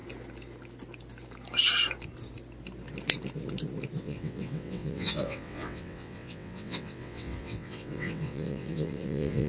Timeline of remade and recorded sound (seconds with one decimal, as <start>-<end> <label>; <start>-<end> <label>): 0.0-4.0 recorded; 4.0-9.5 remade